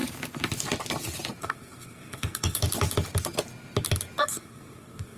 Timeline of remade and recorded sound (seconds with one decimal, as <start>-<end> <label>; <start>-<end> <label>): 0.0-1.4 recorded; 1.4-2.6 remade; 2.6-4.2 recorded; 4.2-5.2 remade